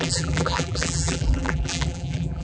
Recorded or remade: remade